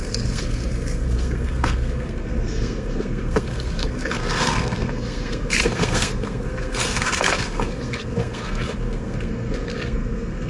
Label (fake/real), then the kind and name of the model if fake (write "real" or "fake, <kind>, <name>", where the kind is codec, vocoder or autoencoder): fake, codec, SNAC